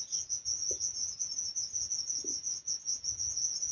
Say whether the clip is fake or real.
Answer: fake